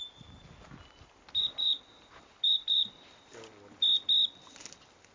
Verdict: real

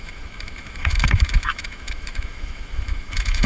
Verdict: fake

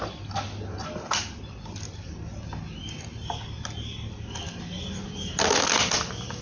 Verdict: real